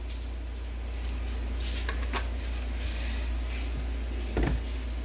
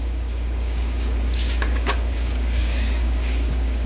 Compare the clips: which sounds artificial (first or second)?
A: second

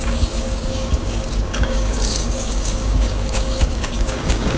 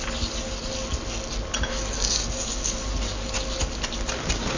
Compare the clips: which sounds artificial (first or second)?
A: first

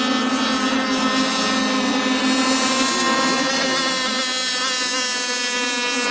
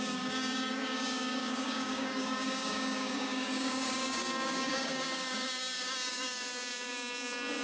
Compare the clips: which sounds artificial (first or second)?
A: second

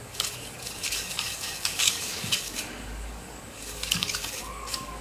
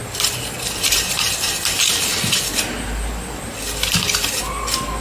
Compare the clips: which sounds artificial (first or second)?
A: first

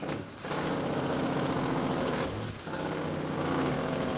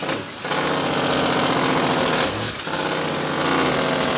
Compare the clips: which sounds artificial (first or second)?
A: first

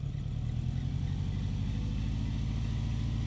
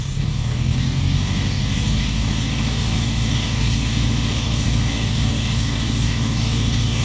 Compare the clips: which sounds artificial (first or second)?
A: second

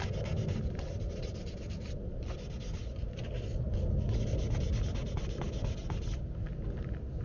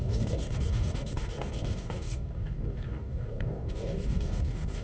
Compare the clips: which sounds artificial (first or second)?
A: second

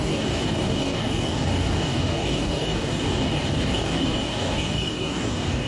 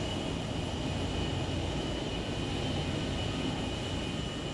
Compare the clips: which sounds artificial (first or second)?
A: first